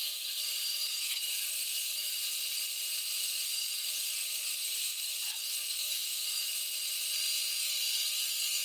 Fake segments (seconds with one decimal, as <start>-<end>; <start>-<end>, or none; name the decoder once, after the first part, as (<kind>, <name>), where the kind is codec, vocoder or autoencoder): 0.0-2.2 (codec, SNAC); 3.2-6.5; 7.6-8.6